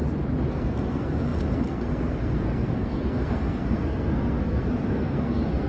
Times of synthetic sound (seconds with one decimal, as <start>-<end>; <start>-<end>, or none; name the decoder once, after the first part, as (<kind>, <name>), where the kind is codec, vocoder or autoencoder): 0.5-5.7 (codec, SNAC)